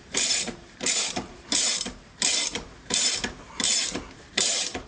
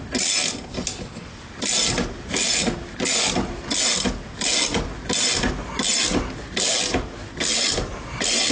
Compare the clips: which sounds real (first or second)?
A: second